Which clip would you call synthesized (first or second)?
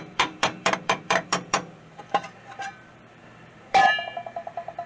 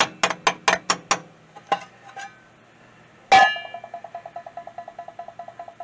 first